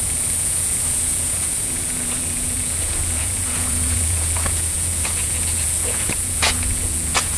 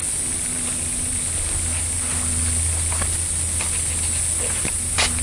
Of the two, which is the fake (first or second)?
first